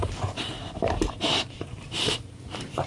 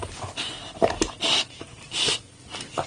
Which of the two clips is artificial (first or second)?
first